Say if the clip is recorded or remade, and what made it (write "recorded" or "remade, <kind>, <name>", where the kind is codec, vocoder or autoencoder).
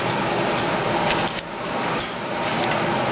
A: recorded